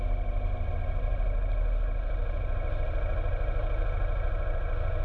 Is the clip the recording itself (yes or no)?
yes